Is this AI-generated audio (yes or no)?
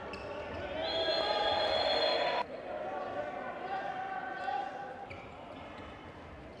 no